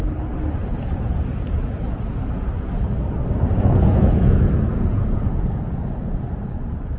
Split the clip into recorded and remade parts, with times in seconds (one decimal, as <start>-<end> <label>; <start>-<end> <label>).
0.0-0.7 recorded; 0.7-2.5 remade; 2.5-3.5 recorded; 3.5-6.6 remade; 6.6-7.0 recorded